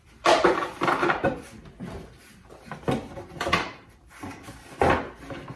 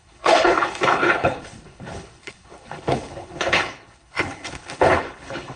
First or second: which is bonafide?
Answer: first